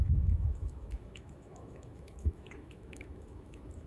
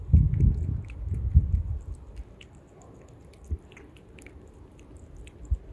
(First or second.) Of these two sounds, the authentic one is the second